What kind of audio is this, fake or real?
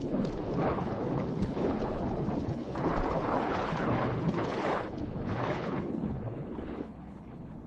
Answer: fake